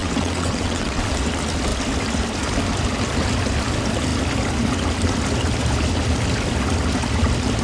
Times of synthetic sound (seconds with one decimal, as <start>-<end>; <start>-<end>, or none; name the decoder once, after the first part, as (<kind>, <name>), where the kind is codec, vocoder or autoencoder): 0.0-1.1 (vocoder, WaveNeXt)